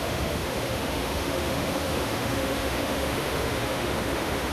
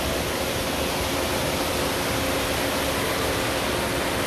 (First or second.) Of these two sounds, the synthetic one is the first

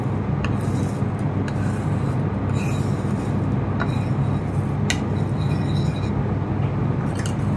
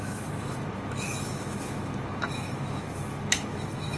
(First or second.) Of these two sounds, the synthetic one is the second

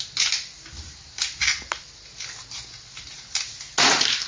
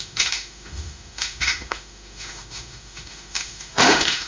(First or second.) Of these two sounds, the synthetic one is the second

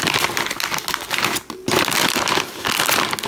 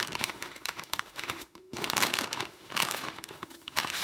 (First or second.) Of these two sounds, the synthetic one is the second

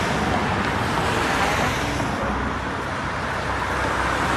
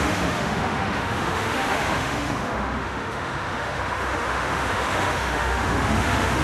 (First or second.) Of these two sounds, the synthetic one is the second